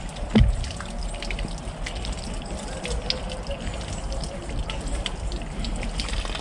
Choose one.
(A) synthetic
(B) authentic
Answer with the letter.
B